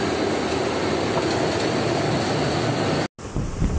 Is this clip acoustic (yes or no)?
yes